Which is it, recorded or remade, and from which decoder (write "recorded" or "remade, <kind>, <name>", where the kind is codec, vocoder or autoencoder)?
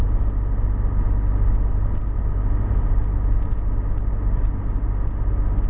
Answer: recorded